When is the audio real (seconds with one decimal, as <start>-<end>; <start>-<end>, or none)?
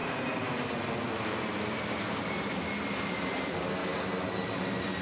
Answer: 0.0-3.0; 3.8-5.0